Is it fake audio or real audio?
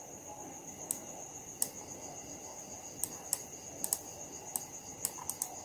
real